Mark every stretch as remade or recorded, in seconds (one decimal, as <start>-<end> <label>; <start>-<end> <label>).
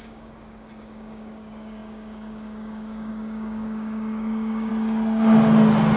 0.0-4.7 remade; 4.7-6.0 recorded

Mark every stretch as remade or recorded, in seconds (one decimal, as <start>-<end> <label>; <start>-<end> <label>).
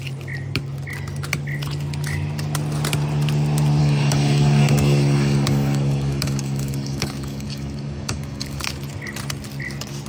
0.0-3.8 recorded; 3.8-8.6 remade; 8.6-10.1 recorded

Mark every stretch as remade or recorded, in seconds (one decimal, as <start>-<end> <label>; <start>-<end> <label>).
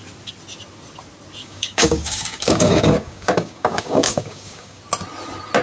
0.0-1.4 recorded; 1.4-4.8 remade; 4.8-5.6 recorded